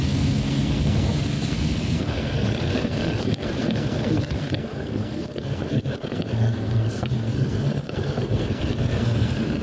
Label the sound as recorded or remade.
remade